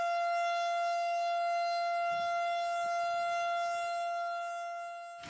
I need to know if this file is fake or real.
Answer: real